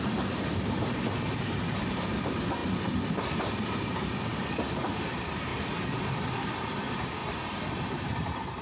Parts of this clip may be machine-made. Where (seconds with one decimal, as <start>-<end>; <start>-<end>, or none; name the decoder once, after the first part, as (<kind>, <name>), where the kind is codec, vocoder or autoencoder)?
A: 0.0-2.6 (vocoder, BigVGAN v2); 3.4-5.5; 6.1-8.6